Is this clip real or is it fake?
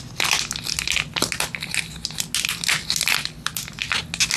real